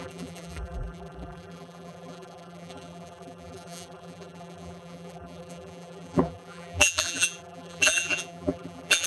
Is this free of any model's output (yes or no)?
no